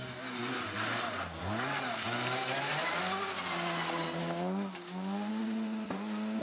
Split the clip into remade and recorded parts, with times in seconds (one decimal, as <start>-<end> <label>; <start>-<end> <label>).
0.0-6.4 recorded